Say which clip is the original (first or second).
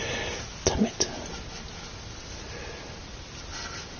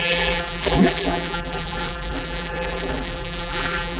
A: first